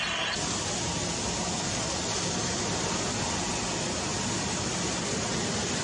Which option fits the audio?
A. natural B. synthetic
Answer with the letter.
A